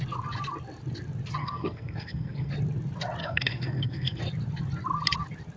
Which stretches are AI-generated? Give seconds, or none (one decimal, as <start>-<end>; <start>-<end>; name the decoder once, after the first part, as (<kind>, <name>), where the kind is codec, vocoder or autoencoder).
1.4-2.5 (codec, SNAC); 3.2-4.2

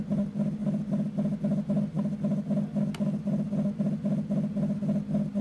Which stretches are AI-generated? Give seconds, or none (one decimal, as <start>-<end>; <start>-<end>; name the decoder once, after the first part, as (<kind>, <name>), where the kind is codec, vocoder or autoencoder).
none

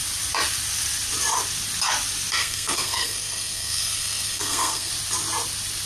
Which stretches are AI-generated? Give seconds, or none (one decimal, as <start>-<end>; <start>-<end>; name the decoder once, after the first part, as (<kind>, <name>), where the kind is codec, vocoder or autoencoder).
2.4-4.9 (codec, SNAC)

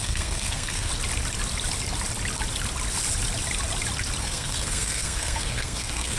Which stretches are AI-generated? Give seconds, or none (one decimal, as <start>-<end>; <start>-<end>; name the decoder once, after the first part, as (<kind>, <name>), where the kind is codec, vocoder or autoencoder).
0.0-0.9 (codec, SNAC); 4.2-6.2

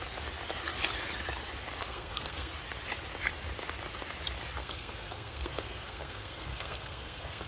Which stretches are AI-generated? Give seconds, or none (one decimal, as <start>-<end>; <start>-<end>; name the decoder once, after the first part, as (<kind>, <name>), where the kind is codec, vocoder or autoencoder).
1.9-2.5 (codec, SNAC); 4.6-7.5

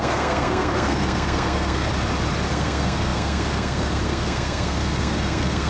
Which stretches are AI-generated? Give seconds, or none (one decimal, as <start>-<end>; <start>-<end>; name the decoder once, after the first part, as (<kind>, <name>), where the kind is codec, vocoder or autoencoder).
0.0-1.9 (codec, SNAC); 2.5-5.7